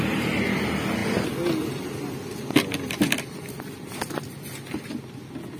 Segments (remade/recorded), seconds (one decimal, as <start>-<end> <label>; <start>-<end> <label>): 0.0-5.6 recorded